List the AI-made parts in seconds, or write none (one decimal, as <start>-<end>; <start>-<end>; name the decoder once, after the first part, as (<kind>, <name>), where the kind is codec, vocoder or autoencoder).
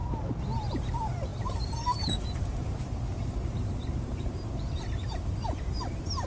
0.7-6.3 (vocoder, BigVGAN v2)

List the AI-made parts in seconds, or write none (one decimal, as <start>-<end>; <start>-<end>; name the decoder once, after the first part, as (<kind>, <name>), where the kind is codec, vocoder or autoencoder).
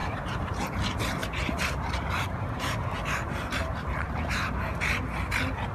0.0-0.6 (vocoder, BigVGAN v2); 1.2-4.6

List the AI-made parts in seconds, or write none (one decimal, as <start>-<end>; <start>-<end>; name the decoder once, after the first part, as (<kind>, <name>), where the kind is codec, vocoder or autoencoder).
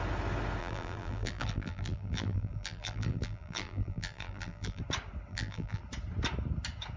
0.6-4.8 (vocoder, BigVGAN v2); 5.3-5.8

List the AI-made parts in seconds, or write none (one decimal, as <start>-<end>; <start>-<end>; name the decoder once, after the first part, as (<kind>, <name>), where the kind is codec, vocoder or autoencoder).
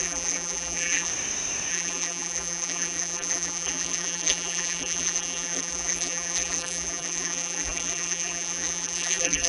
0.0-1.1 (vocoder, BigVGAN v2); 1.7-9.5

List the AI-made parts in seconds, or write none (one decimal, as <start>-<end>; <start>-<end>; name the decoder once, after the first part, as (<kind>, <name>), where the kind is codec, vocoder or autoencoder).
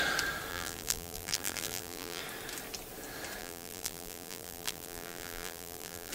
0.5-2.2 (vocoder, BigVGAN v2); 3.4-6.1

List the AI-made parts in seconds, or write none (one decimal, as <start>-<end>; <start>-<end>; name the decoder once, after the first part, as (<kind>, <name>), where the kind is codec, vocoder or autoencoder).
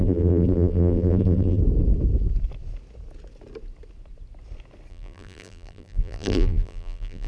0.0-1.6 (vocoder, BigVGAN v2); 4.9-7.3